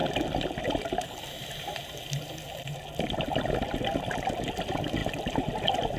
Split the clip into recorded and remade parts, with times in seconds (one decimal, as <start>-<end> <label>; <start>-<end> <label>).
0.0-6.0 recorded